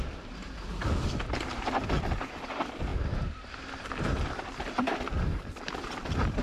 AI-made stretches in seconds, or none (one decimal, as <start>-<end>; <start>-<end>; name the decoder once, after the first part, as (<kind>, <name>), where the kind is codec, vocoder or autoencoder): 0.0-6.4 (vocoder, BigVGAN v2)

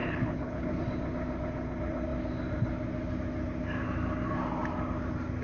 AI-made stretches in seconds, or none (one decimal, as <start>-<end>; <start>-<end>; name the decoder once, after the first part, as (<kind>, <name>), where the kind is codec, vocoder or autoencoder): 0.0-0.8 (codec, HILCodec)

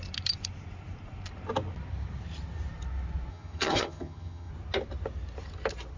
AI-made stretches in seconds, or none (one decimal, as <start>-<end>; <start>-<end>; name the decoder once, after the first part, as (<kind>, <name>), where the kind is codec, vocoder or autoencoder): 3.3-4.5 (vocoder, HiFi-GAN)